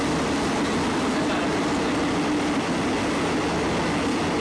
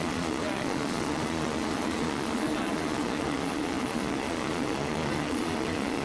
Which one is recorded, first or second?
first